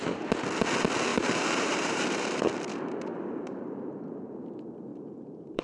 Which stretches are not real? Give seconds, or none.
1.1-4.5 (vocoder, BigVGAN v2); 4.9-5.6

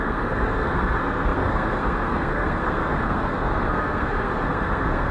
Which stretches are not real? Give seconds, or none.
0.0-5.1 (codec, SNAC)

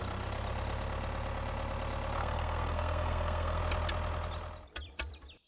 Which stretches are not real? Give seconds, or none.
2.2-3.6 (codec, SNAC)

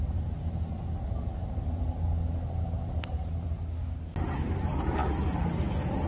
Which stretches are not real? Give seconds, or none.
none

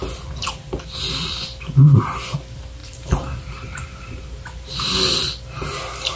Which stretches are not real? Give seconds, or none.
2.8-4.7 (vocoder, BigVGAN v2)